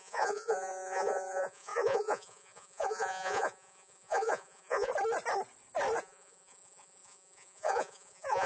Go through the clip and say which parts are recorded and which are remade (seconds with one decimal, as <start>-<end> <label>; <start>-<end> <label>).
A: 0.0-4.9 remade; 4.9-6.0 recorded; 6.0-8.5 remade